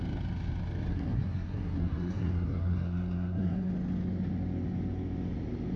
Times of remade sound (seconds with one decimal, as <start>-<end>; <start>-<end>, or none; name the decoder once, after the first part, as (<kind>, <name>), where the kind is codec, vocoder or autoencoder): 0.9-3.7 (codec, SNAC)